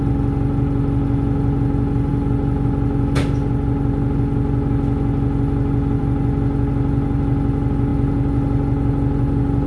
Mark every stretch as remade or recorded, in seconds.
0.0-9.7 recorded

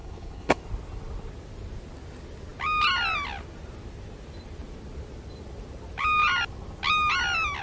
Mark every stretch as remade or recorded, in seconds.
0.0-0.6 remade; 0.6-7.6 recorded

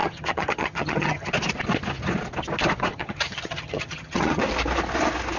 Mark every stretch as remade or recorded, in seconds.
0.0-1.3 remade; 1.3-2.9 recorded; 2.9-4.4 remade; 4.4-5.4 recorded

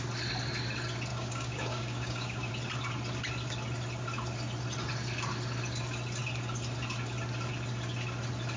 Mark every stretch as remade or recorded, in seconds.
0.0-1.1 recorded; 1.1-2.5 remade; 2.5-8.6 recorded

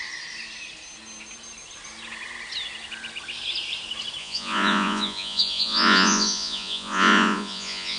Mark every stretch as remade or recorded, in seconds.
0.0-4.2 recorded; 4.2-8.0 remade